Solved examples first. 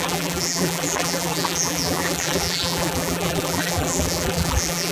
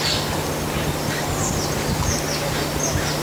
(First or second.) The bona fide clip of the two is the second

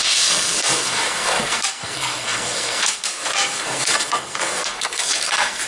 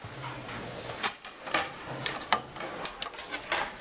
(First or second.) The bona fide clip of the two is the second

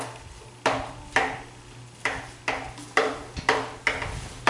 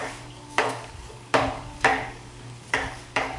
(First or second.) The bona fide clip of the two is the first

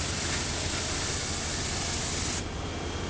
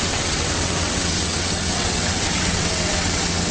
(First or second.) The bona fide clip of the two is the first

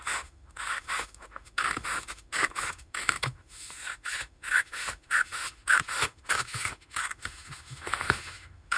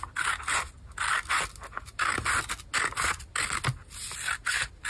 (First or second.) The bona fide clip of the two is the second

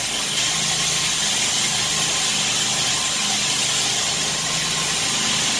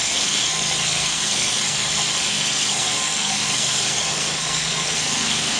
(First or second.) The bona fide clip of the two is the first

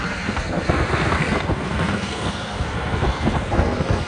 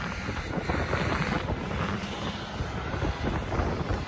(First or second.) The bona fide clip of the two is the second